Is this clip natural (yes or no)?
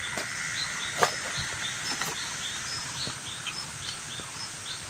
yes